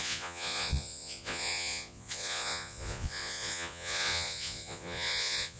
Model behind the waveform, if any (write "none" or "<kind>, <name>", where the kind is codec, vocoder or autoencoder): vocoder, Vocos